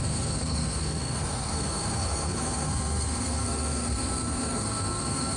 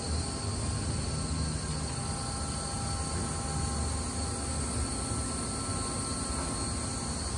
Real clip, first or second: second